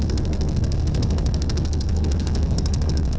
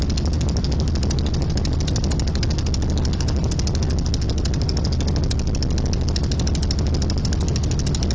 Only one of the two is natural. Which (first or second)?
second